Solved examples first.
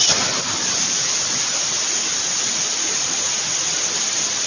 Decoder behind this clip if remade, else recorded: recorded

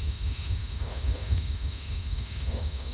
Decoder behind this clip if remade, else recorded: remade, autoencoder, DAC-VAE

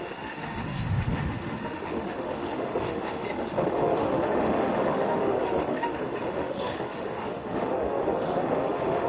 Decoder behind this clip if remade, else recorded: remade, autoencoder, DAC-VAE